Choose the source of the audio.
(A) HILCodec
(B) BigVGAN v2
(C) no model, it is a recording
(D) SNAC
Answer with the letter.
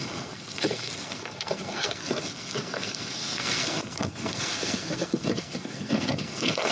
D